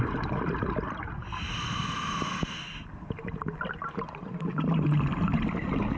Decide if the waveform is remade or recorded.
recorded